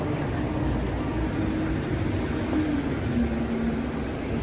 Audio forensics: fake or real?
real